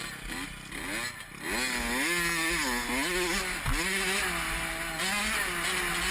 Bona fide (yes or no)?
yes